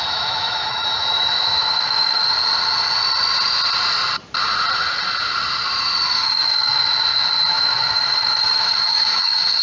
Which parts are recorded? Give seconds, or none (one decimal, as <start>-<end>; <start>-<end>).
2.2-6.1; 6.9-7.5

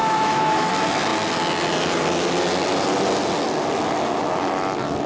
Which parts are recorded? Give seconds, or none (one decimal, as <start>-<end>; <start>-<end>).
0.7-5.1

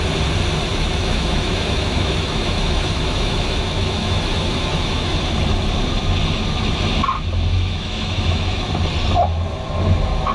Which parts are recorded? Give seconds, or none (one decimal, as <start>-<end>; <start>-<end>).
0.0-0.7; 5.2-7.5; 8.7-10.3

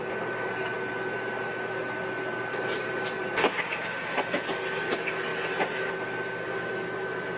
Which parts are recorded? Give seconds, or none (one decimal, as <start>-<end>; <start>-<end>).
0.0-7.4

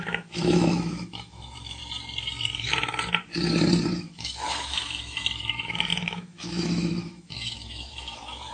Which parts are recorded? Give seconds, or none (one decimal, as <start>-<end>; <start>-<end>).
1.8-4.0

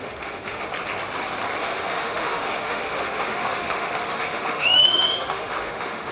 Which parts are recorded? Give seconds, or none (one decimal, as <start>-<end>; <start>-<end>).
0.7-1.6

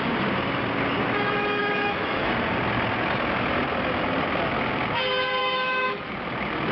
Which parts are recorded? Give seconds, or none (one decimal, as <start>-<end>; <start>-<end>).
0.0-1.6; 2.3-5.4; 6.1-6.7